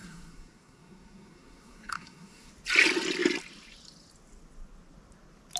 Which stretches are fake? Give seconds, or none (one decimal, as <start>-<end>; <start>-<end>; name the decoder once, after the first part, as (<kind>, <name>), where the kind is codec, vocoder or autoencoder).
0.0-2.5 (codec, SNAC)